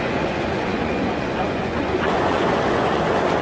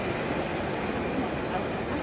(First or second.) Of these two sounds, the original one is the second